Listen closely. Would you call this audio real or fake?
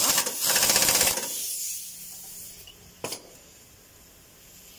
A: real